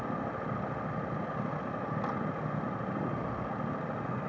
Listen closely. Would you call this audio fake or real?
real